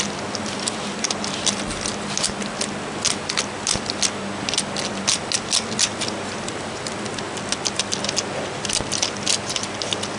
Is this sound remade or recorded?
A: recorded